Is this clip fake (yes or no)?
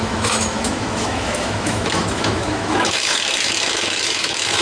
yes